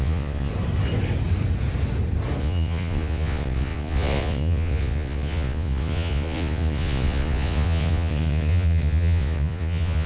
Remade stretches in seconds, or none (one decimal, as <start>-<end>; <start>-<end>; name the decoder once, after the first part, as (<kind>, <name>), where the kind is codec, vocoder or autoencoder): 0.0-0.5 (vocoder, Vocos); 2.4-10.1